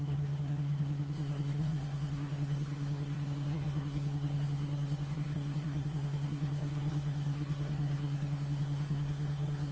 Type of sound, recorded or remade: remade